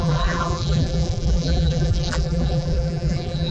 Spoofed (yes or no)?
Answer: yes